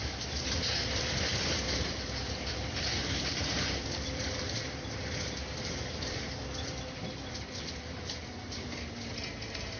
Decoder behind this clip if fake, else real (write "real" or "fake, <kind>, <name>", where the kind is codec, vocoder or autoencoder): fake, vocoder, BigVGAN v2